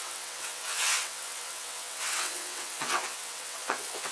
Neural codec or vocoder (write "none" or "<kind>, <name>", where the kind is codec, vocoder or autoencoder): vocoder, WaveNeXt